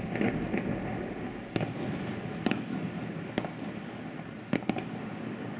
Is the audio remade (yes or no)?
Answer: no